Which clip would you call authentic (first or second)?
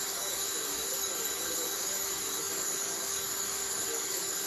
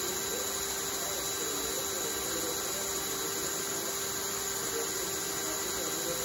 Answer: second